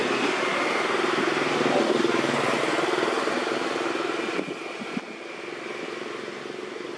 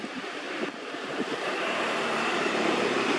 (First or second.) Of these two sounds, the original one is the first